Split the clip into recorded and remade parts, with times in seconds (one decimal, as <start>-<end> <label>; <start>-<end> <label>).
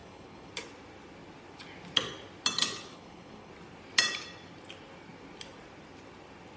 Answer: 0.0-0.5 remade; 0.5-2.9 recorded; 2.9-3.5 remade; 3.5-6.6 recorded